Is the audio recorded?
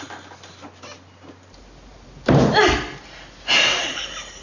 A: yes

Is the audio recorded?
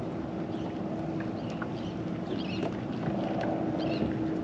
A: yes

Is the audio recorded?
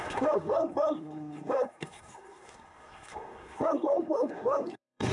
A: no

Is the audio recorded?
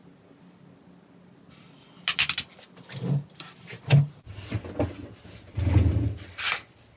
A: yes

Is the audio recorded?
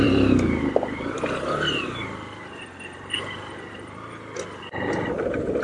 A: no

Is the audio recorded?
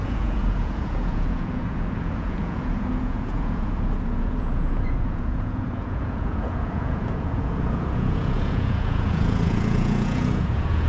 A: no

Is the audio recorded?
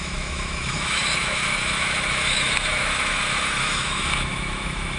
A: no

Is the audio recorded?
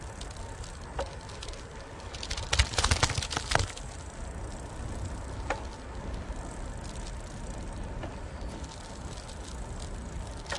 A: yes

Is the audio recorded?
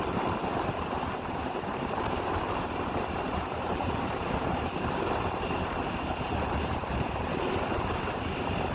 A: no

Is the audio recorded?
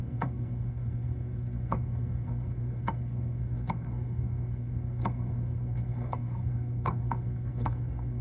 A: no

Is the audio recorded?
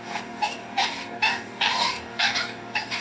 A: no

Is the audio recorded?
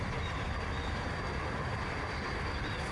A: yes